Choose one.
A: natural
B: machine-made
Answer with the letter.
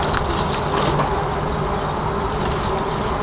A